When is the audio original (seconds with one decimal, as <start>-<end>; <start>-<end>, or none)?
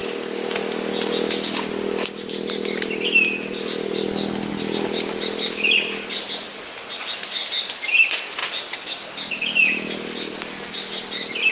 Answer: 0.0-11.5